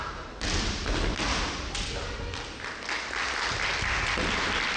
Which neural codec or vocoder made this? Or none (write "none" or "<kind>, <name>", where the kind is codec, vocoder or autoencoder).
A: none